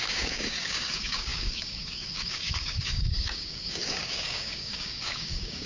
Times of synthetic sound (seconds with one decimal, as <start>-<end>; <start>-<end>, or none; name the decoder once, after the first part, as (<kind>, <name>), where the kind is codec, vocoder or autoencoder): 0.0-5.7 (codec, DAC)